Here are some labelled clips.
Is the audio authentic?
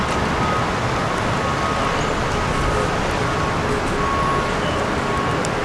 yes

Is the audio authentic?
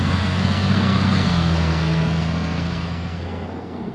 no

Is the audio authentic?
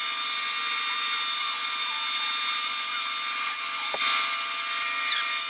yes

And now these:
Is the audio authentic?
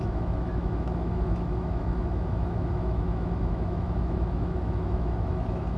no